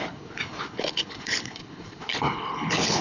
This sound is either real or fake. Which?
fake